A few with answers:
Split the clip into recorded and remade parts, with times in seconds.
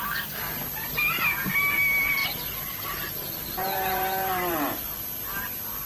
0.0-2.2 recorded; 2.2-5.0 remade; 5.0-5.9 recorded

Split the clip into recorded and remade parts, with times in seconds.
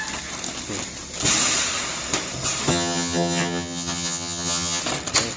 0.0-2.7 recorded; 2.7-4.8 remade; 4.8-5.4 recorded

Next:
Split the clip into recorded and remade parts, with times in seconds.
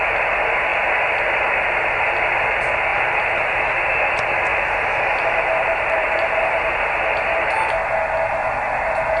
0.0-2.9 recorded; 2.9-3.5 remade; 3.5-4.5 recorded; 4.5-6.8 remade; 6.8-9.2 recorded